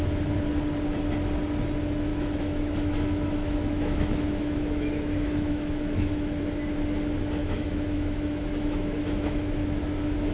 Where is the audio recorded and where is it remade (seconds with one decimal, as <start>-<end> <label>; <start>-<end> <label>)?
0.0-2.1 recorded; 2.1-6.4 remade; 6.4-7.4 recorded; 7.4-9.5 remade; 9.5-10.3 recorded